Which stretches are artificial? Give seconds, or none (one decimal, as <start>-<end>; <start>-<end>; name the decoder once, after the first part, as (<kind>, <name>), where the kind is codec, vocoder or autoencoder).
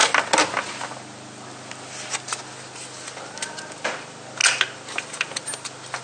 none